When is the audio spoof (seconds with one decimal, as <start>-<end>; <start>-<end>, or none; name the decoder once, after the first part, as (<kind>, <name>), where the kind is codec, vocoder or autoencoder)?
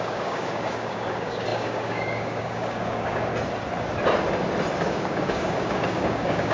0.0-3.3 (codec, DAC); 4.8-6.5